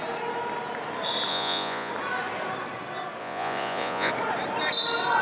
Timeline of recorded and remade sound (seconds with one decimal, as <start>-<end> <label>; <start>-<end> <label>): 0.0-1.3 recorded; 1.3-1.9 remade; 1.9-3.2 recorded; 3.2-4.1 remade; 4.1-5.2 recorded